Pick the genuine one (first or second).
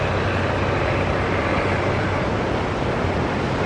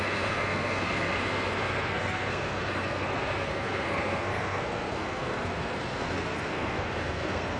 first